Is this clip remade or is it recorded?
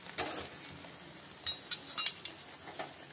recorded